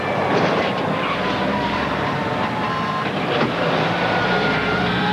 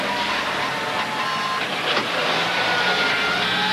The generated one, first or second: first